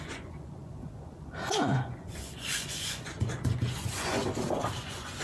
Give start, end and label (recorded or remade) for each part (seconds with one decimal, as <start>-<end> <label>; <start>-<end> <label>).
0.0-4.2 remade; 4.2-4.8 recorded; 4.8-5.2 remade